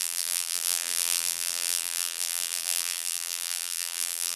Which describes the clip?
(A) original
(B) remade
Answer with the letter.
B